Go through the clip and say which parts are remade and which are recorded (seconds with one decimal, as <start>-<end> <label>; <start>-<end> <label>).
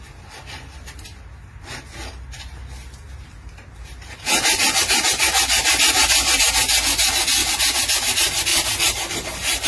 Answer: 0.0-5.6 recorded; 5.6-6.4 remade; 6.4-7.4 recorded; 7.4-7.9 remade; 7.9-8.5 recorded; 8.5-9.7 remade